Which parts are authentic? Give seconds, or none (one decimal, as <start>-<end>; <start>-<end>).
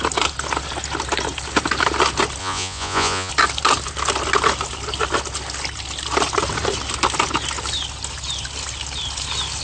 0.0-2.4; 3.3-9.6